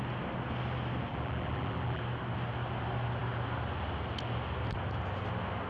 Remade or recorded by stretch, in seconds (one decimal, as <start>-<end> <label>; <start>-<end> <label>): 0.0-1.1 recorded; 1.1-2.0 remade; 2.0-5.7 recorded